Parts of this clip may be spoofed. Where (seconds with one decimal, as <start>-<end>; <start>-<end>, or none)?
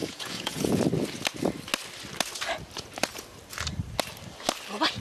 0.0-0.8